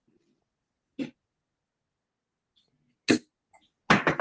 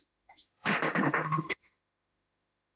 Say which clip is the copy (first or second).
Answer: second